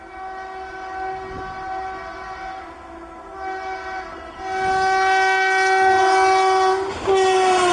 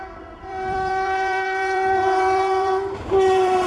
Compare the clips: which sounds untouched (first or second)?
first